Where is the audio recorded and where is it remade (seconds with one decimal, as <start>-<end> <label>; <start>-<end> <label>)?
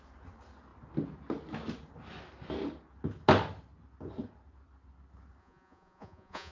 0.0-5.4 recorded; 5.4-6.5 remade